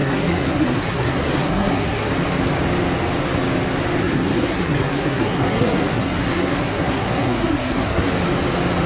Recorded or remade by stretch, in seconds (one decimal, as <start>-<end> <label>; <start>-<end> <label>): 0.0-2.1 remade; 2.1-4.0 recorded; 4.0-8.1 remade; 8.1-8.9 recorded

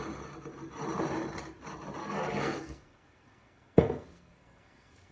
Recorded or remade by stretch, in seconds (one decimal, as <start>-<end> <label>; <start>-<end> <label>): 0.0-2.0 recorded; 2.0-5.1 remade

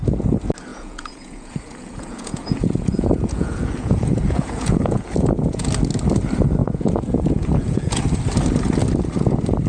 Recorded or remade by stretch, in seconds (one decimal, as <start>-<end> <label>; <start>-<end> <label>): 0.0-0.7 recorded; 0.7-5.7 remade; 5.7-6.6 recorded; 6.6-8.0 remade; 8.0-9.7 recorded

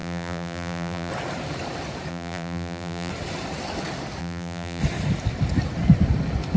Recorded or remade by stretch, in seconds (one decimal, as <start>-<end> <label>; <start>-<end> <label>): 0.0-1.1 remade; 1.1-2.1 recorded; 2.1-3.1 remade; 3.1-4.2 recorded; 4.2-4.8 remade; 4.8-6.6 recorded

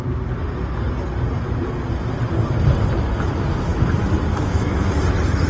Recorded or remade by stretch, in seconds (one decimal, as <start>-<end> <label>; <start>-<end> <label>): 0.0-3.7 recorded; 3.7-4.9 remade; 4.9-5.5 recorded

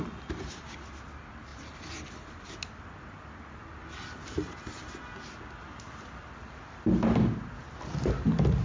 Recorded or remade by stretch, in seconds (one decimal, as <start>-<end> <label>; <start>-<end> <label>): 0.0-8.6 recorded

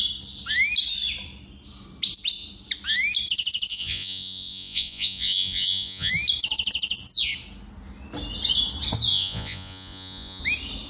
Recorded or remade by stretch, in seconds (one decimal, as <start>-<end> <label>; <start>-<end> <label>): 0.0-3.7 recorded; 3.7-6.1 remade; 6.1-9.1 recorded; 9.1-10.4 remade; 10.4-10.9 recorded